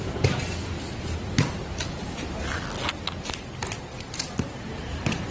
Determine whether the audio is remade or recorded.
recorded